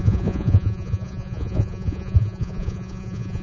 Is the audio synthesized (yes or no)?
yes